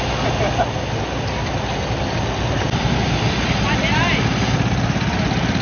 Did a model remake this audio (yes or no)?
no